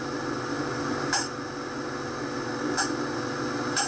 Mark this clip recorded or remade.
recorded